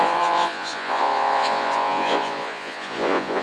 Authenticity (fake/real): fake